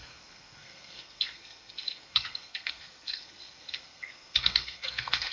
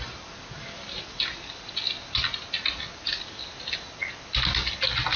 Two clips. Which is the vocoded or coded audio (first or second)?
first